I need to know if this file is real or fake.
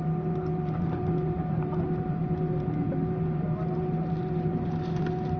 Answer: fake